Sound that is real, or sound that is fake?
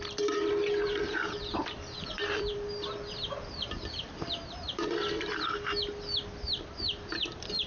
fake